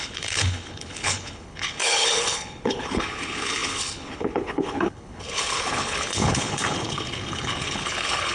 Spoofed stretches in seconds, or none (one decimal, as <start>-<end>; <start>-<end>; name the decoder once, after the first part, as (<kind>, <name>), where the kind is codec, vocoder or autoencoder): 0.0-8.3 (codec, HILCodec)